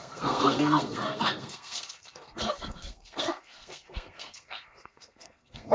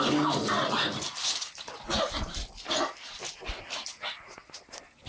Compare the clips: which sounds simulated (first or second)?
first